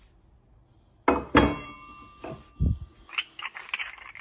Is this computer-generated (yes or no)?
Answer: no